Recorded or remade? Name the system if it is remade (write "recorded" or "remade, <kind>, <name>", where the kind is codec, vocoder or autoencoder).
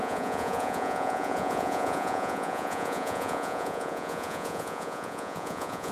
remade, vocoder, Vocos